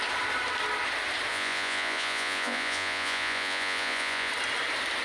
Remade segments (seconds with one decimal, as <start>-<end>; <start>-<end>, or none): 1.3-4.3